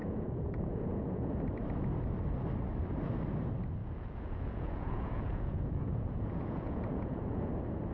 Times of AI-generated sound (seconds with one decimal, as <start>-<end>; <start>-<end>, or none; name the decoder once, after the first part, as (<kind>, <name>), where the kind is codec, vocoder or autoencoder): 0.0-1.4 (vocoder, Vocos); 3.8-7.5